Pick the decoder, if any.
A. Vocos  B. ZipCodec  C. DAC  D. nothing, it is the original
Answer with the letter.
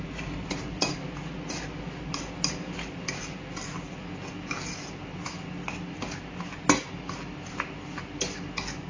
D